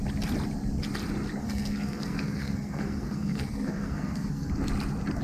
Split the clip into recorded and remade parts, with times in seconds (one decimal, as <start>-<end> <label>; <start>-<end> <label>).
0.0-1.4 recorded; 1.4-4.5 remade; 4.5-5.2 recorded